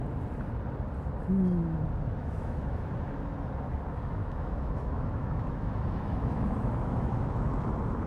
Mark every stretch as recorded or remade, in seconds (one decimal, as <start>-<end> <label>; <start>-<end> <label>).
0.0-2.2 recorded; 2.2-2.9 remade; 2.9-4.2 recorded; 4.2-7.5 remade; 7.5-8.1 recorded